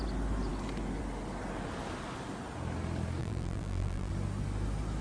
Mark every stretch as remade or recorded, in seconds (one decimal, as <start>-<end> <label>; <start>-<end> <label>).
0.0-3.2 recorded; 3.2-4.1 remade; 4.1-5.0 recorded